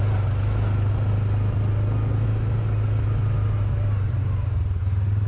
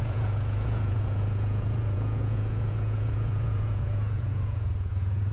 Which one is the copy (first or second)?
second